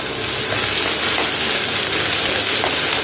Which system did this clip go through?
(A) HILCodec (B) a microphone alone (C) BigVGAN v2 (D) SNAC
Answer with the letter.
B